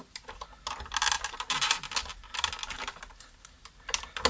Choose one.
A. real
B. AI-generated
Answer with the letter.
A